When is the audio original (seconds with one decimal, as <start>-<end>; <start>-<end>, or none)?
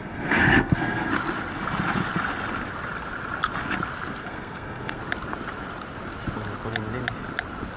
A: 1.1-4.2; 5.0-7.8